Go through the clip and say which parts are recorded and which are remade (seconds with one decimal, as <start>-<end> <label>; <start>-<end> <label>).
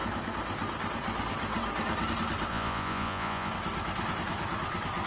0.0-2.5 recorded; 2.5-3.5 remade; 3.5-5.1 recorded